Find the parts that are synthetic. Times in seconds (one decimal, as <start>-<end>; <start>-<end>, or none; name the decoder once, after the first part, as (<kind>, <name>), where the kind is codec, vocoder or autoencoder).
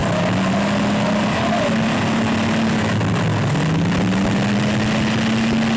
none